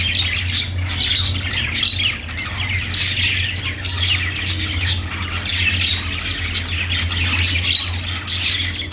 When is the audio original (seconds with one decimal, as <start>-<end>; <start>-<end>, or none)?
0.0-8.9